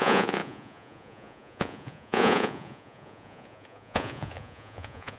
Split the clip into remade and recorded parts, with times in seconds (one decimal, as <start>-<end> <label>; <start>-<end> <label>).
0.0-5.2 remade